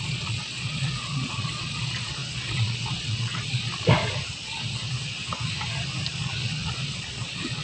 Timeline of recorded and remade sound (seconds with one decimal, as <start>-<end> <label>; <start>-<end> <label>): 0.0-3.7 remade; 3.7-6.2 recorded; 6.2-7.6 remade